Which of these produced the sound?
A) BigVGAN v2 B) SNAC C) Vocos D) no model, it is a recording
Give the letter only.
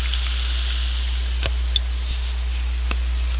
D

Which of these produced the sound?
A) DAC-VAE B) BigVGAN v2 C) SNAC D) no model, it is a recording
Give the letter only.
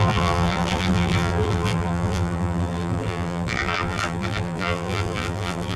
B